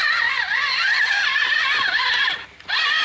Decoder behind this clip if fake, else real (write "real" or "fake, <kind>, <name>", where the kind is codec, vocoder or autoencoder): real